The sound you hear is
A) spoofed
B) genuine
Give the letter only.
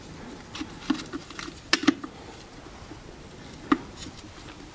B